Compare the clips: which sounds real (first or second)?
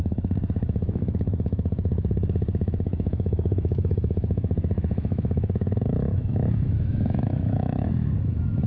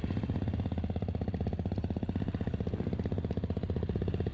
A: second